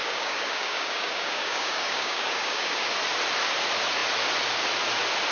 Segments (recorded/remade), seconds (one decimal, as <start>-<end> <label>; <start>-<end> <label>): 0.0-2.9 remade; 2.9-5.3 recorded